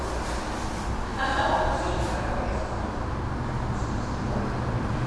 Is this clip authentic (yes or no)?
yes